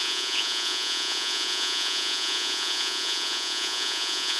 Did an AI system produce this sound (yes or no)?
yes